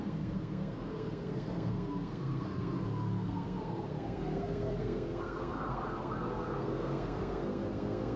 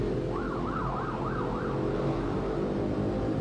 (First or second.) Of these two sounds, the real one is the second